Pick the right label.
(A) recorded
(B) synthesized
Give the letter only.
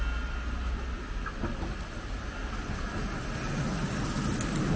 A